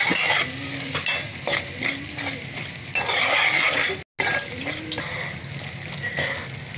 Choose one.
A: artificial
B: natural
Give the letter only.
B